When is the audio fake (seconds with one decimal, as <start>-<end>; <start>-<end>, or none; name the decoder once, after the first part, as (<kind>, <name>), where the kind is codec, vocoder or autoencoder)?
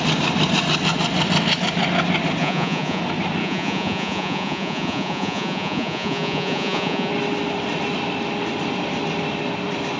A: 2.4-3.0 (vocoder, Vocos); 3.4-7.1